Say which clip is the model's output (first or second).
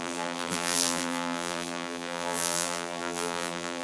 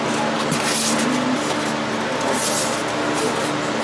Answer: first